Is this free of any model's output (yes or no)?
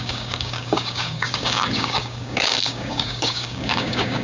no